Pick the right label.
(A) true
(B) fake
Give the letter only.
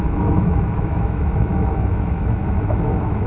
B